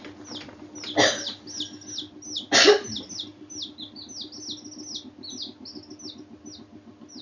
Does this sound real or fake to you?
real